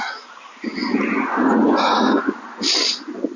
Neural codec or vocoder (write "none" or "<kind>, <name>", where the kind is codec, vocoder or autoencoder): none